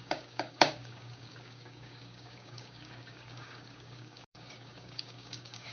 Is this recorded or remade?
remade